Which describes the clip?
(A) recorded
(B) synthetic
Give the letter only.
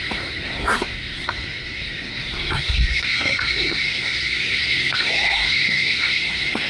B